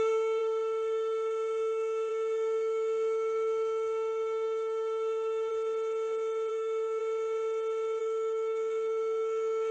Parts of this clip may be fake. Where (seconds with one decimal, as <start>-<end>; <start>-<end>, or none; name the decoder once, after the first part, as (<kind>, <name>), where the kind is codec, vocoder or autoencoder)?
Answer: 0.0-5.5 (codec, SNAC); 6.5-7.0; 8.0-9.7